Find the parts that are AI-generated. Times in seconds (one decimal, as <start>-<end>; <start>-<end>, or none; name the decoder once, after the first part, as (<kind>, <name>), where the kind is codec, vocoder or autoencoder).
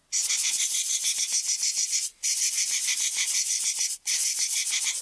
none